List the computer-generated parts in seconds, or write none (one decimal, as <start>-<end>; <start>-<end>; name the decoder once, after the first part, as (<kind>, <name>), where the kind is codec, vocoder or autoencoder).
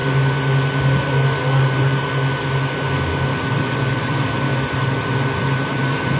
3.6-6.2 (vocoder, BigVGAN v2)